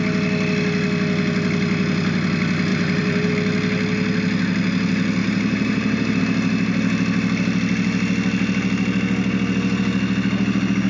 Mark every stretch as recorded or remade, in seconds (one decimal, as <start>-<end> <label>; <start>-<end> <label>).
0.0-2.7 recorded; 2.7-3.3 remade; 3.3-5.2 recorded; 5.2-6.2 remade; 6.2-10.9 recorded

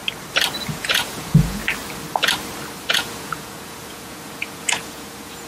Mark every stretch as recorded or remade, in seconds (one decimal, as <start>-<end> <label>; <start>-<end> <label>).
0.0-0.7 recorded; 0.7-1.6 remade; 1.6-2.9 recorded; 2.9-5.5 remade